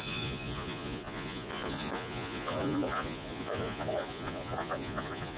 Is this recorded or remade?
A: remade